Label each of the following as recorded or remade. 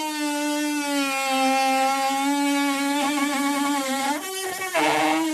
recorded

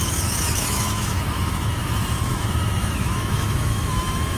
remade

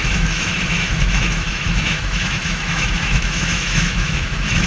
remade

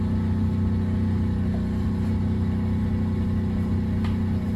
recorded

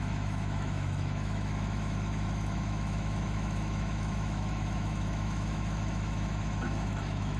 remade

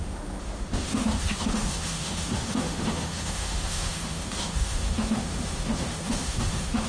remade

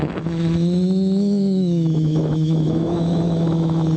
remade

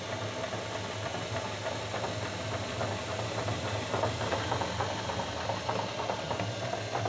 recorded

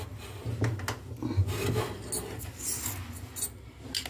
recorded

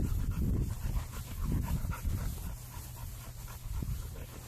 recorded